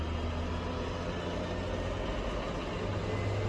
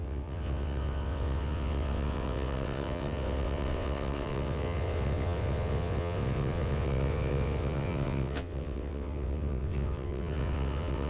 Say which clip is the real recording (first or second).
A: first